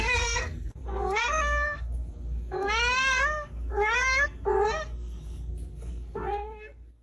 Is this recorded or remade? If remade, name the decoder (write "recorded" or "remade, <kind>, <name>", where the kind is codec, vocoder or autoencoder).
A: remade, codec, SNAC